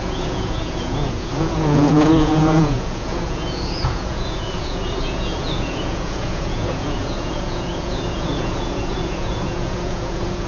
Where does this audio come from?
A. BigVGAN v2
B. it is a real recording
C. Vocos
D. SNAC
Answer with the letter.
C